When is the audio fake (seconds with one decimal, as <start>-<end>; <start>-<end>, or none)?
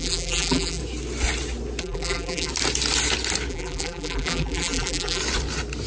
0.0-0.8; 1.8-2.5; 3.5-5.2